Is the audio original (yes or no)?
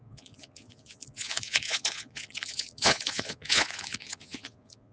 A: no